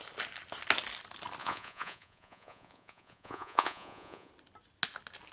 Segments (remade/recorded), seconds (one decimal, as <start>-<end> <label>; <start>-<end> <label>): 0.0-1.4 recorded; 1.4-4.3 remade; 4.3-5.3 recorded